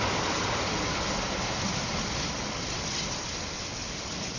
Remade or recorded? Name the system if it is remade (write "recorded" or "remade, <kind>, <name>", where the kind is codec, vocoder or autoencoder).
recorded